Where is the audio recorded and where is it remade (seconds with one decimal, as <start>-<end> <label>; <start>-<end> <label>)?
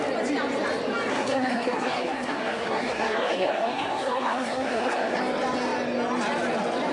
0.0-1.1 recorded; 1.1-5.2 remade; 5.2-6.9 recorded